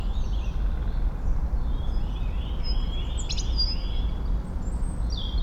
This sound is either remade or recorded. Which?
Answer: recorded